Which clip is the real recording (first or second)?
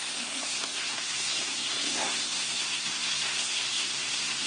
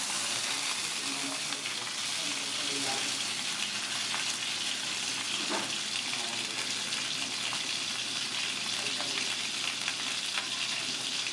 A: second